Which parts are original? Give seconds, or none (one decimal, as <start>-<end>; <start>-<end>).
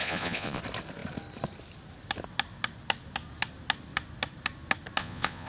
0.6-5.0